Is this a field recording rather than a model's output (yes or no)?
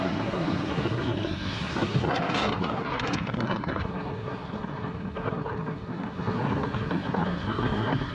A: no